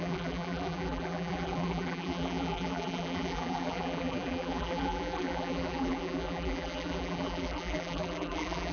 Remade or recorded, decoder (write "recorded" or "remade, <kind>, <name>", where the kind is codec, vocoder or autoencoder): remade, vocoder, BigVGAN v2